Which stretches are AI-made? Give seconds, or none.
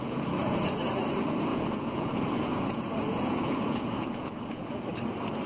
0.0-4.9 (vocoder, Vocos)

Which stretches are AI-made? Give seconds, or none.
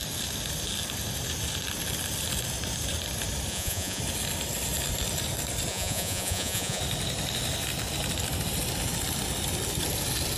3.5-4.0 (vocoder, Vocos); 5.7-6.8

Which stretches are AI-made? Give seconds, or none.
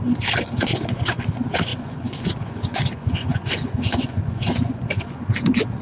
0.7-1.2 (vocoder, Vocos); 1.7-5.2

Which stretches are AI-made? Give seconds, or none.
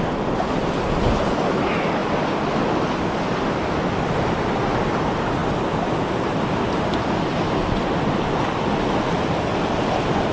none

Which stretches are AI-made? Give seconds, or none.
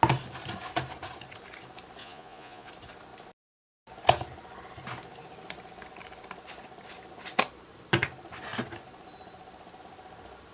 2.0-2.7 (vocoder, Vocos)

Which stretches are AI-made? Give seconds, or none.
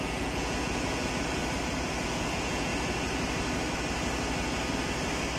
0.0-1.4 (vocoder, Vocos); 1.9-2.7